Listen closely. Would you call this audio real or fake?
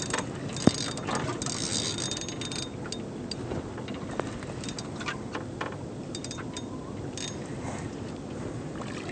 real